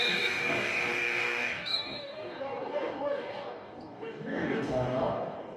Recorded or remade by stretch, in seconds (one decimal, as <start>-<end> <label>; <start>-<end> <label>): 0.0-5.6 remade

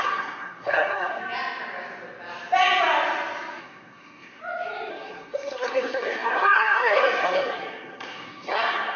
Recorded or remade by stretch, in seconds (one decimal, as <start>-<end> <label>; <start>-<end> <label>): 0.0-1.2 remade; 1.2-3.6 recorded; 3.6-4.4 remade; 4.4-4.9 recorded; 4.9-9.0 remade

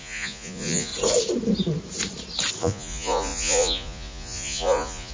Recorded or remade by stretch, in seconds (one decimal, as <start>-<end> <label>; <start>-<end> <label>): 0.0-0.9 remade; 0.9-2.6 recorded; 2.6-5.1 remade

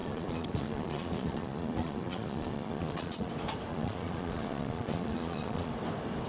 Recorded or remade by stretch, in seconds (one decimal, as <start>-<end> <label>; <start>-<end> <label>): 0.0-3.3 remade; 3.3-3.7 recorded; 3.7-5.7 remade; 5.7-6.3 recorded

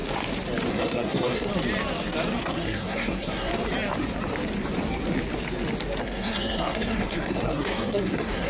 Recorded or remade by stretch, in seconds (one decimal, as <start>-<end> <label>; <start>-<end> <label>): 0.0-0.7 recorded; 0.7-1.5 remade; 1.5-2.4 recorded; 2.4-3.5 remade; 3.5-6.0 recorded; 6.0-8.5 remade

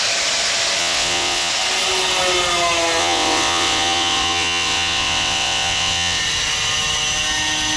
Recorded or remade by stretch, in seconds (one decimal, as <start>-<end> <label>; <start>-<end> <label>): 0.0-0.8 recorded; 0.8-1.5 remade; 1.5-3.0 recorded; 3.0-6.2 remade; 6.2-7.8 recorded

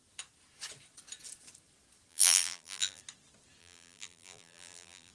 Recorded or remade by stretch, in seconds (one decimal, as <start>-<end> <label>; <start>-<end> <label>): 0.0-2.1 recorded; 2.1-3.0 remade; 3.0-3.6 recorded; 3.6-5.1 remade